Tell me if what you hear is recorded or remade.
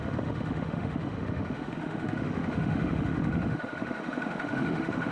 remade